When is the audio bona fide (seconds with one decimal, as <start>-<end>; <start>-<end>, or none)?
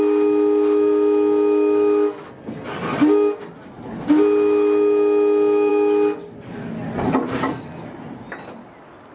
0.0-9.1